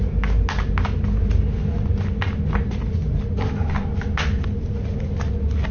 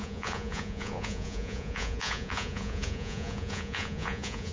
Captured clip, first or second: first